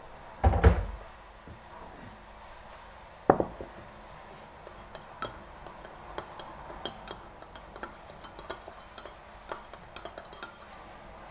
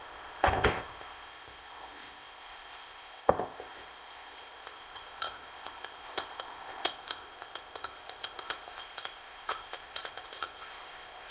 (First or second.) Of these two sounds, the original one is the first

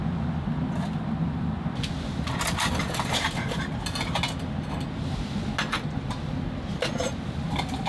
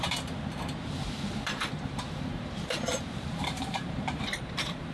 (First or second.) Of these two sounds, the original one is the first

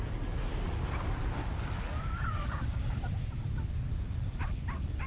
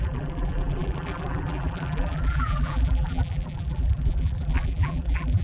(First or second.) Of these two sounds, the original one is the first